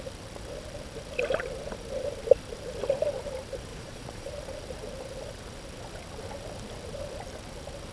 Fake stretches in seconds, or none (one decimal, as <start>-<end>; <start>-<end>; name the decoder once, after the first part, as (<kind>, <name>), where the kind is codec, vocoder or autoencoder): 3.7-4.3 (vocoder, Vocos)